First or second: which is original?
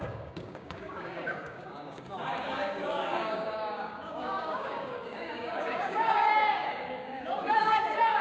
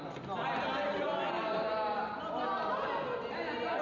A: second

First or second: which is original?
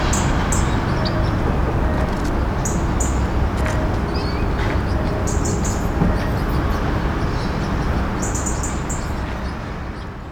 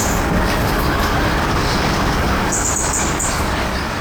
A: first